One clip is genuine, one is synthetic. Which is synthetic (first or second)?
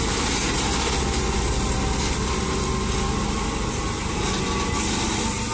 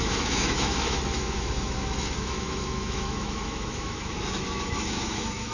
second